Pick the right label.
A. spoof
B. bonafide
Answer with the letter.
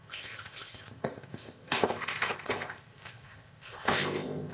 A